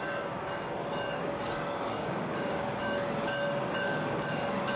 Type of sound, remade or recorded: remade